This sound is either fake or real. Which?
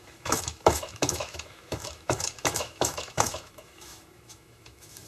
fake